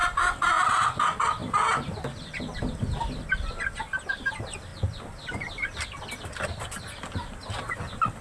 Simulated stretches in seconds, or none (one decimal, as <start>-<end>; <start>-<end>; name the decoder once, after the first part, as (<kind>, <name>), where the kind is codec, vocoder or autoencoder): none